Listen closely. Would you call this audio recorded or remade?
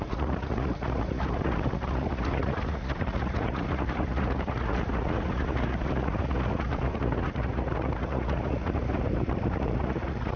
remade